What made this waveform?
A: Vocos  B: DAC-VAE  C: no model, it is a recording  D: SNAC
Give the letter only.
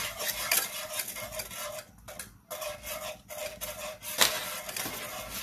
C